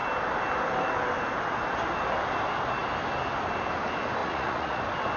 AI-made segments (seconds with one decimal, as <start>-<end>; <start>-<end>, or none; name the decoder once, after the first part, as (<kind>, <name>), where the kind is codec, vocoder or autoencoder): 4.2-4.8 (vocoder, Vocos)